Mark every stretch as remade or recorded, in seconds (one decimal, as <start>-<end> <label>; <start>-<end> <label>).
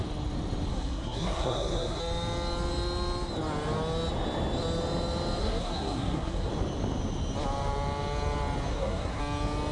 0.0-0.7 recorded; 0.7-2.0 remade; 2.0-5.4 recorded; 5.4-6.5 remade; 6.5-8.7 recorded; 8.7-9.2 remade; 9.2-9.7 recorded